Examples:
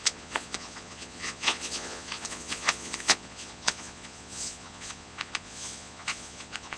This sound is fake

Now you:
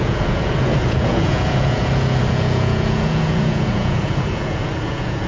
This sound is fake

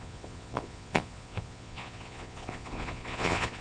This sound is fake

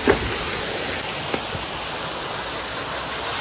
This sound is real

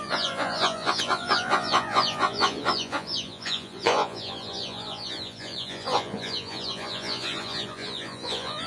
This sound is fake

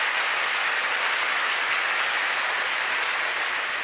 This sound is real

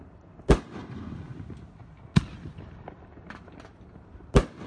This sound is real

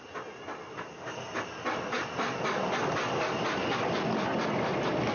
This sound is real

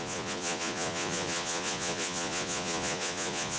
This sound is fake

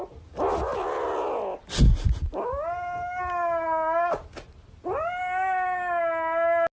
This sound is real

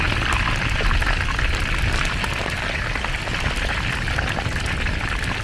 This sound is real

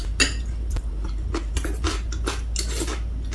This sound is real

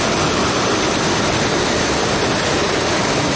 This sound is real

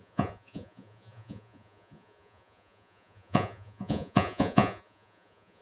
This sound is fake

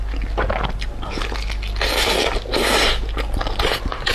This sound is real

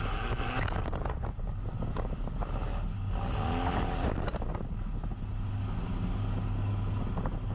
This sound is real